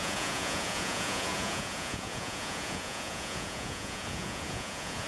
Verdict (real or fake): fake